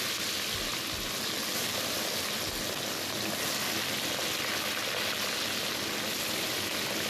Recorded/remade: recorded